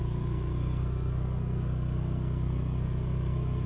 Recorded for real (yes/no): no